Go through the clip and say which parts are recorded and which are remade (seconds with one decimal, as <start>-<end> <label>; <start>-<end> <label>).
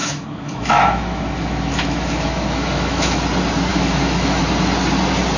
0.0-3.2 remade; 3.2-3.7 recorded; 3.7-4.4 remade; 4.4-5.4 recorded